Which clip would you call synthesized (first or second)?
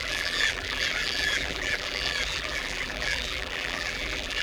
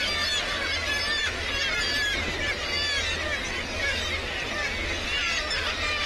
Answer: first